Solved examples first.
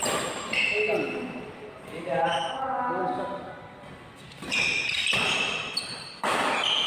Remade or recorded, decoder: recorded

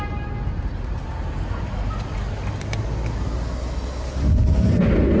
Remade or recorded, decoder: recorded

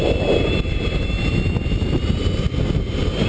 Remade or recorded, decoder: remade, vocoder, BigVGAN v2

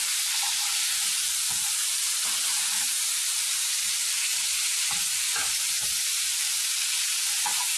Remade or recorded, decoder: remade, vocoder, BigVGAN v2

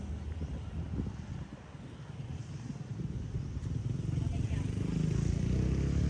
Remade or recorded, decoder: recorded